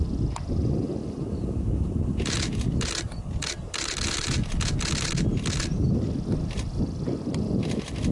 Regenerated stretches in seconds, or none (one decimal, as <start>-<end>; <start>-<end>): none

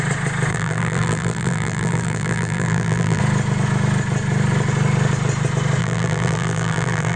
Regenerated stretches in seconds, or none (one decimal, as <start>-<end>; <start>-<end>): 0.5-3.2; 5.8-7.2

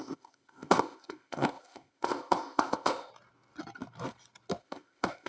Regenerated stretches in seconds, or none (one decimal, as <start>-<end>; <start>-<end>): 0.0-3.1; 4.6-5.3

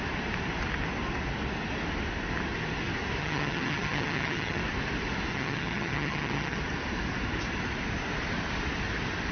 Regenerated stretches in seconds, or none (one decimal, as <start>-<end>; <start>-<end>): 3.2-4.6; 5.3-6.6

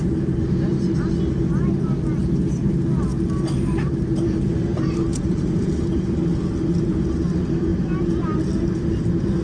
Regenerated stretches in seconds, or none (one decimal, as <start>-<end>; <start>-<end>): 5.1-5.7